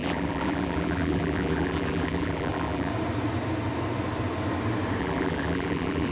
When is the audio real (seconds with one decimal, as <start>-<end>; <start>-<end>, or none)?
2.9-5.0